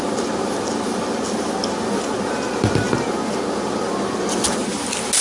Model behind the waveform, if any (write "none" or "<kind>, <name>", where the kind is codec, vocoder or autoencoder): none